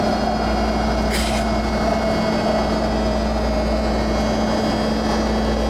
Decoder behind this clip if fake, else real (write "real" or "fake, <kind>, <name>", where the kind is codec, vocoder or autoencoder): real